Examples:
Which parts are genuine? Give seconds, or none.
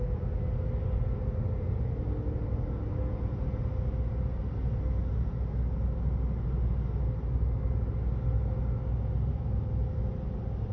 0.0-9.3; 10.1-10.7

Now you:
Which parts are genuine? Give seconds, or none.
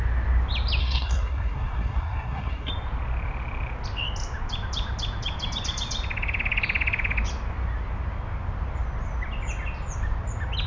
0.0-0.8; 2.7-10.7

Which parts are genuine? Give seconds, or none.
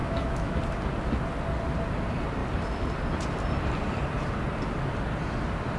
0.6-5.8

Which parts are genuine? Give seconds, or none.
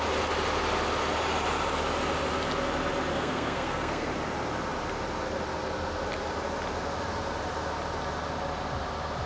0.0-3.1; 4.1-9.3